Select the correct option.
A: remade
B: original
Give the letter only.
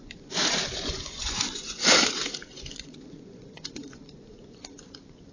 A